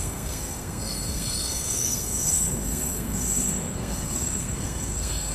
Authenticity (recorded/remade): remade